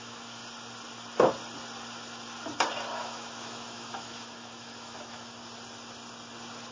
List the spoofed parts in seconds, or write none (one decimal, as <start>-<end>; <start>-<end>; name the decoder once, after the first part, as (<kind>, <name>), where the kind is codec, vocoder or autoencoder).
0.0-0.4 (autoencoder, DAC-VAE); 3.0-5.4